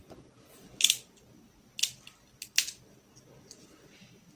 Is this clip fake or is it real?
real